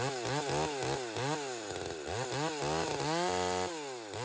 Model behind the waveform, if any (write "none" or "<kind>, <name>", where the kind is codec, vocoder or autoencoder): none